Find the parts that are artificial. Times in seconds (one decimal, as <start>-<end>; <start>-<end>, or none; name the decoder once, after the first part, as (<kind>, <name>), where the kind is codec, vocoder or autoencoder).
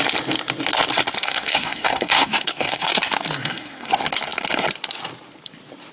1.2-3.0 (codec, SNAC); 3.4-3.9